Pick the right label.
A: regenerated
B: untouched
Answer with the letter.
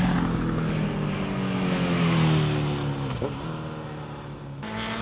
B